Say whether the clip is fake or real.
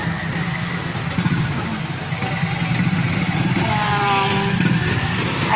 real